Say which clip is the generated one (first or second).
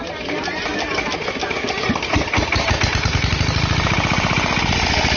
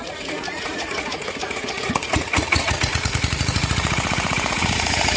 second